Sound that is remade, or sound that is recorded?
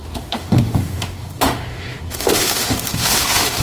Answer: remade